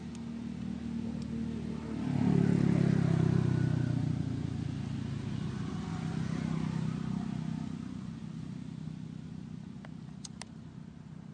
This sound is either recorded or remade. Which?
recorded